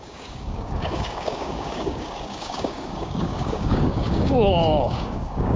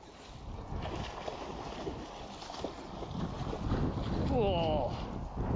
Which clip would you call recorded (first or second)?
second